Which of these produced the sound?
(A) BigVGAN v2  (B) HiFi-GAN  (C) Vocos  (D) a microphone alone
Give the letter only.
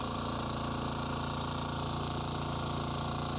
A